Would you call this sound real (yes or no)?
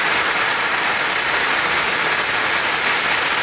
yes